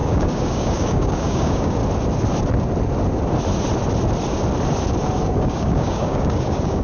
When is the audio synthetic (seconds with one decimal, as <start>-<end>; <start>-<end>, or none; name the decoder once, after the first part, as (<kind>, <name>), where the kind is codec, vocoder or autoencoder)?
0.0-1.8 (codec, DAC); 5.2-6.8